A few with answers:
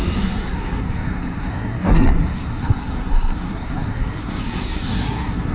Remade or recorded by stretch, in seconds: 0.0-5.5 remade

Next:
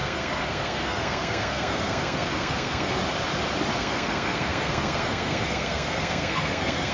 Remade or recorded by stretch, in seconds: 0.0-3.0 remade; 3.0-3.8 recorded; 3.8-6.9 remade

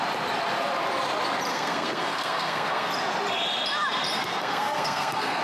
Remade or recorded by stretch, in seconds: 0.0-1.5 recorded; 1.5-2.9 remade; 2.9-4.4 recorded; 4.4-5.4 remade

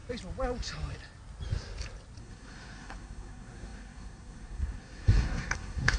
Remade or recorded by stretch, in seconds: 0.0-2.2 recorded; 2.2-6.0 remade

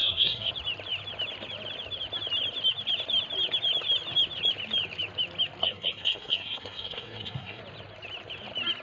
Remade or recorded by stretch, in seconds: 0.0-0.5 remade; 0.5-5.6 recorded; 5.6-7.6 remade; 7.6-8.8 recorded